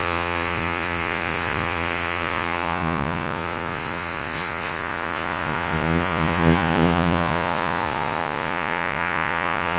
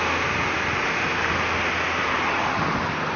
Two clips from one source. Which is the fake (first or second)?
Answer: first